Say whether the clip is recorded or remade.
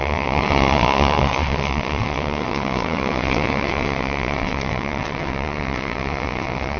remade